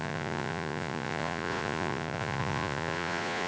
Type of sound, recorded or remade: remade